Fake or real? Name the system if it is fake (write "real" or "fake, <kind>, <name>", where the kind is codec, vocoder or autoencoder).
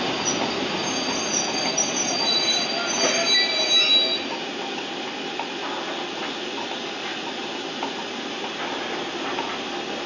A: real